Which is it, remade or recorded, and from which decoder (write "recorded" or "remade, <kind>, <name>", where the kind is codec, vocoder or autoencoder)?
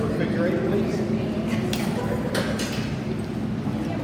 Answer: recorded